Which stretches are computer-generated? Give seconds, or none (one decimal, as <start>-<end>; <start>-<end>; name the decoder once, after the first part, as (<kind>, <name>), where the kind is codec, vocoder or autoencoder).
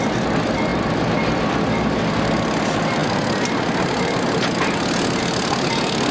none